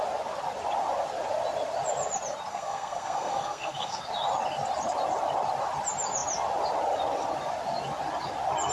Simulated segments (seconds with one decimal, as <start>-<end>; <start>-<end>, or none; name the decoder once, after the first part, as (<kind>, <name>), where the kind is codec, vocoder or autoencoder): 2.5-4.0 (codec, SNAC)